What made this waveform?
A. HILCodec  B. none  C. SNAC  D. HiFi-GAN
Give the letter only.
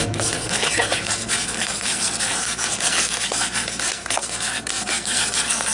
C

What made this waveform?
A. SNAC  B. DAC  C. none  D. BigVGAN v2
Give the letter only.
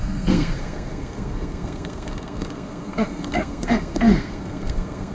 A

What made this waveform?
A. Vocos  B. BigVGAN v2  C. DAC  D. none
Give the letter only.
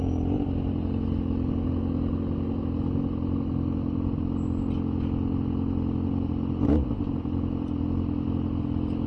D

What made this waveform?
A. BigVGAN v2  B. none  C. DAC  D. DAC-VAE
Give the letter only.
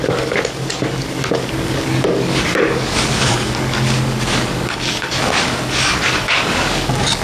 C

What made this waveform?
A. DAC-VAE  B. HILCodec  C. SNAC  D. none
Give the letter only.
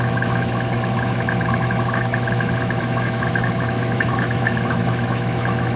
A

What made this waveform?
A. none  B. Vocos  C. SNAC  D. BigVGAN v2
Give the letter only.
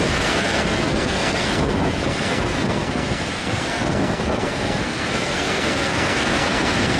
C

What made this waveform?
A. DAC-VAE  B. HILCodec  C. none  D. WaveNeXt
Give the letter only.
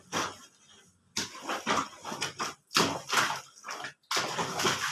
C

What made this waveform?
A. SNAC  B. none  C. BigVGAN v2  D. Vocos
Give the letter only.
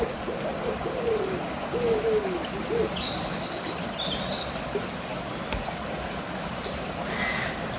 B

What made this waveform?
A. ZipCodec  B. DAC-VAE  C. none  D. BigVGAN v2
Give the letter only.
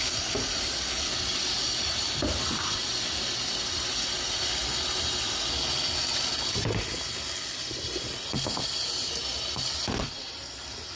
C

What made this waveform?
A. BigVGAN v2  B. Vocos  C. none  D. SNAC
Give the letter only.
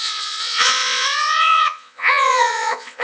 B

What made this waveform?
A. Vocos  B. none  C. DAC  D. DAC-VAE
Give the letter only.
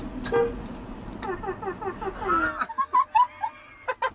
B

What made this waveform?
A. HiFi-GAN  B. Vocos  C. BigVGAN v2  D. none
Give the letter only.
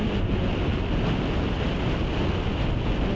D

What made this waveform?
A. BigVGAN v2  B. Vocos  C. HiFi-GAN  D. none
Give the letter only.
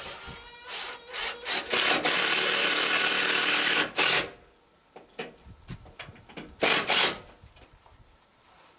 D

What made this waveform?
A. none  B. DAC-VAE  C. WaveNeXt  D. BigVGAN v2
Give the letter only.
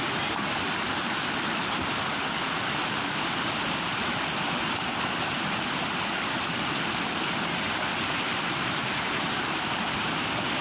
A